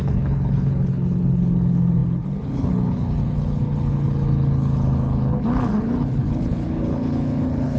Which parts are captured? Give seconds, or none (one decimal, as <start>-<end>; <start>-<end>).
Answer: none